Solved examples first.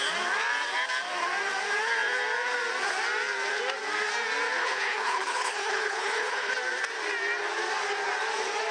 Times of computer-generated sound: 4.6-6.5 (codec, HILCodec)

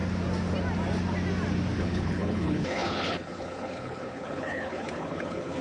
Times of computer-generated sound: 1.8-5.6 (codec, HILCodec)

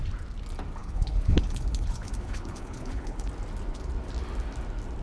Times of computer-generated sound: 0.8-3.3 (codec, HILCodec)

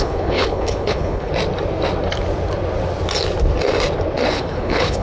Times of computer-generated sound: 0.0-1.3 (codec, HILCodec); 4.3-5.0